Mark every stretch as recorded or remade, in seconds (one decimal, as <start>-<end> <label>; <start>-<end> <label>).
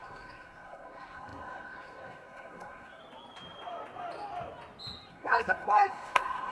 0.0-3.0 remade; 3.0-5.1 recorded; 5.1-6.5 remade